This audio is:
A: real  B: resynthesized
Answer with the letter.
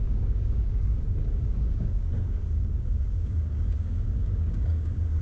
B